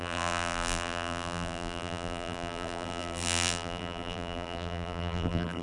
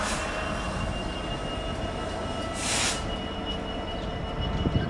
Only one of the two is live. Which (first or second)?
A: second